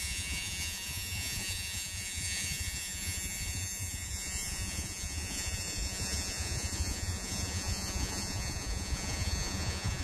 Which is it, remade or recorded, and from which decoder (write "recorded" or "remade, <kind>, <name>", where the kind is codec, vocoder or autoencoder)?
remade, vocoder, Vocos